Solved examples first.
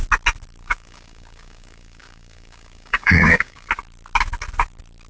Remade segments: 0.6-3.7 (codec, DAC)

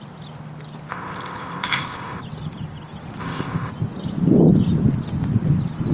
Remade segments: 0.9-2.2 (codec, ZipCodec); 3.2-3.7

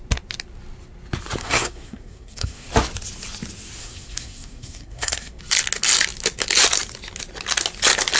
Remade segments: 1.4-2.7 (codec, SNAC); 3.8-5.4

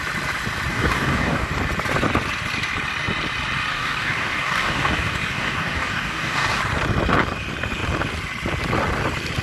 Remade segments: 0.7-1.5 (codec, DAC); 3.7-6.6